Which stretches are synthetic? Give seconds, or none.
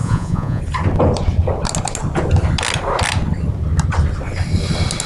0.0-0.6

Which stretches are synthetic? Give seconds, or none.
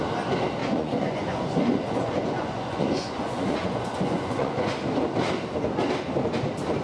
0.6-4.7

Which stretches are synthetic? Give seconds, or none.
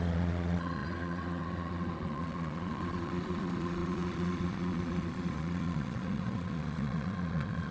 0.0-7.7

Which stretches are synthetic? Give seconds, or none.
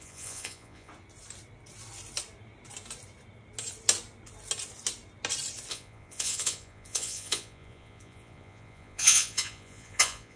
0.0-0.9; 5.7-10.4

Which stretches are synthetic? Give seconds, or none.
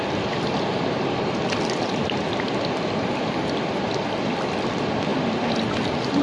none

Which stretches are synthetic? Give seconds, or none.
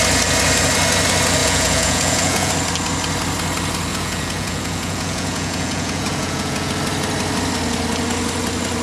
1.4-2.5; 3.9-6.7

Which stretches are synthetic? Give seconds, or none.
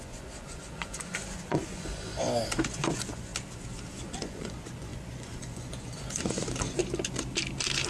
0.0-2.1; 2.9-3.3; 3.9-6.8